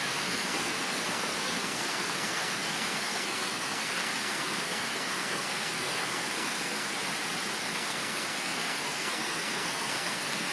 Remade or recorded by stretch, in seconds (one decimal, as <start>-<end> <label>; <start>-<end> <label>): 0.0-7.0 remade; 7.0-7.6 recorded; 7.6-10.5 remade